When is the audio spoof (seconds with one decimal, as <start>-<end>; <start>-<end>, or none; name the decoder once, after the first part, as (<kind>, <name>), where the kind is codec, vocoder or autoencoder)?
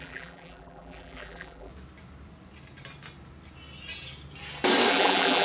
0.0-1.7 (vocoder, BigVGAN v2); 4.9-5.4